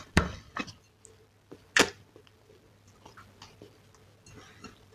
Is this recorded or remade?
recorded